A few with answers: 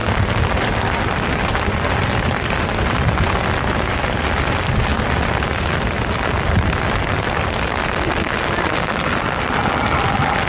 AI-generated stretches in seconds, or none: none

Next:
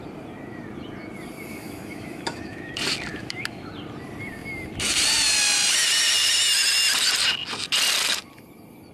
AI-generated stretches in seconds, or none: 1.5-2.7 (autoencoder, DAC-VAE); 3.1-3.7